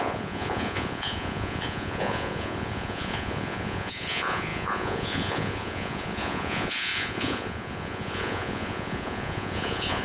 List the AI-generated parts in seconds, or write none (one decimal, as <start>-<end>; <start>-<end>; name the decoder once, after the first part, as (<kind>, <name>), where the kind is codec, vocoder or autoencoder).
0.0-10.0 (vocoder, Vocos)